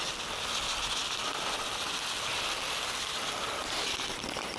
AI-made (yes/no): no